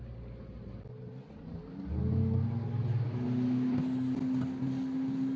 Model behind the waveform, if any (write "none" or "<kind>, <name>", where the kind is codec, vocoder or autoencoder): none